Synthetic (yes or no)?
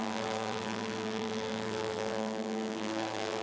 yes